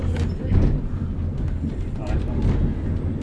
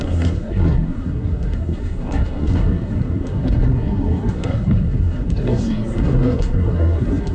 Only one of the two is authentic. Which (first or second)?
first